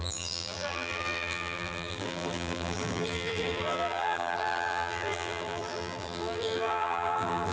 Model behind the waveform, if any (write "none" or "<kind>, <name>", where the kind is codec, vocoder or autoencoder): vocoder, BigVGAN v2